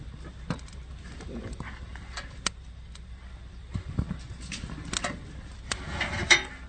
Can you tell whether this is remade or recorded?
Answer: recorded